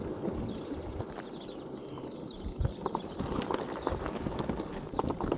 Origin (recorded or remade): recorded